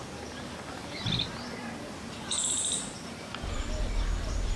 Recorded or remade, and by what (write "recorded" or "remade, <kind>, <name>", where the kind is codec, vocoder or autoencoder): recorded